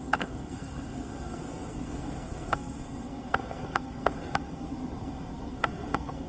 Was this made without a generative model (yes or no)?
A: no